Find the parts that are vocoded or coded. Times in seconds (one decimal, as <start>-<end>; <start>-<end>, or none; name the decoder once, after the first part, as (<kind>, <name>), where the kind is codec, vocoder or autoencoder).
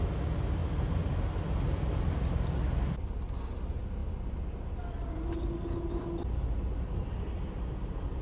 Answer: none